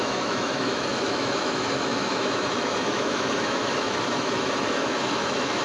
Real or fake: fake